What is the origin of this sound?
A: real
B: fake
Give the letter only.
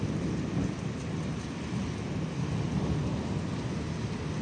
A